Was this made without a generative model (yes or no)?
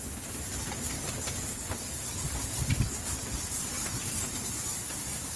yes